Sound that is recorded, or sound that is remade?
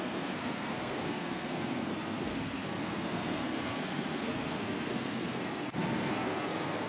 remade